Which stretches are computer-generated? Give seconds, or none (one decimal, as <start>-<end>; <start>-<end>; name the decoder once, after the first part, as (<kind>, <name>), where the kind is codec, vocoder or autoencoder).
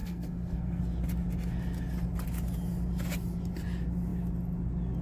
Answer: 0.0-0.8 (codec, SNAC)